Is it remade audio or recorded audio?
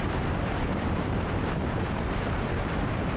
remade